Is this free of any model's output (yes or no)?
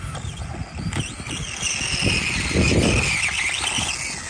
yes